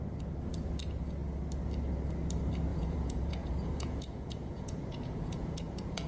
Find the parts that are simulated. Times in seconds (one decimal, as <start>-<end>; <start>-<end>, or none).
2.7-6.1